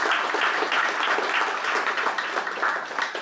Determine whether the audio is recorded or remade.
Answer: remade